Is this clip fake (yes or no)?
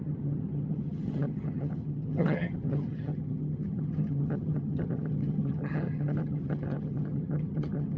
yes